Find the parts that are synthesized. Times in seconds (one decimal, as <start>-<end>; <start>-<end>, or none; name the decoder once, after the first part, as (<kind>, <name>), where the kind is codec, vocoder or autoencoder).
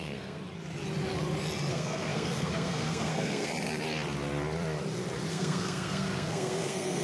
0.0-0.4 (codec, SNAC); 1.7-3.5; 5.3-7.0